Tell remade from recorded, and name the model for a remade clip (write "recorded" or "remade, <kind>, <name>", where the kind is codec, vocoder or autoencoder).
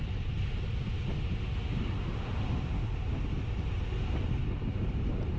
recorded